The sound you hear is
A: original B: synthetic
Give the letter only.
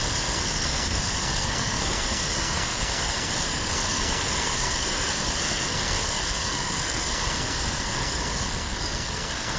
B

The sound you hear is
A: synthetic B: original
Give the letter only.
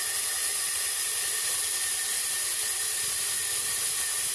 B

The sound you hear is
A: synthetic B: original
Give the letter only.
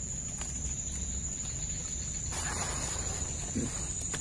B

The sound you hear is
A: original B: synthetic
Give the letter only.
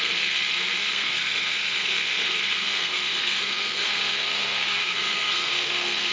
B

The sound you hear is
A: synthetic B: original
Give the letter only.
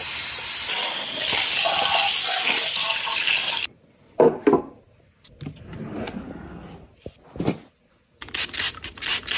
B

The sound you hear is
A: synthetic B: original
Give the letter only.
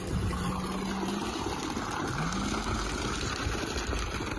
B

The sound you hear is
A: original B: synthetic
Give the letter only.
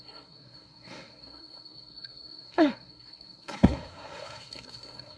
B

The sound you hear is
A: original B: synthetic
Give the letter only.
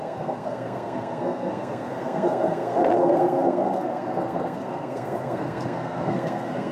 B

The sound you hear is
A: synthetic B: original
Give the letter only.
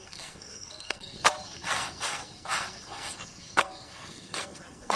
A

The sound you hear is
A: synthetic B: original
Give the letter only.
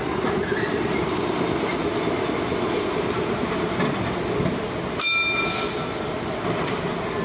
B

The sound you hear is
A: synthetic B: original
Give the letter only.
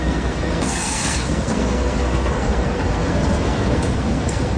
A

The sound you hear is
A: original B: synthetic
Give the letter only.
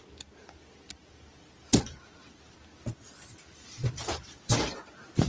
A